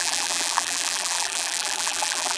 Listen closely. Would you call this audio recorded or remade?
remade